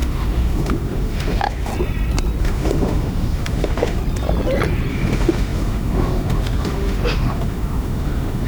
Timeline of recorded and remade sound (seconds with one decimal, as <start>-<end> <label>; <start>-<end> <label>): 0.0-1.7 remade; 1.7-2.4 recorded; 2.4-4.0 remade; 4.0-4.9 recorded; 4.9-8.5 remade